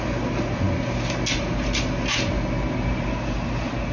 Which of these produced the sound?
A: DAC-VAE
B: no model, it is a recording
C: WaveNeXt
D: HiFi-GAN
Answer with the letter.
B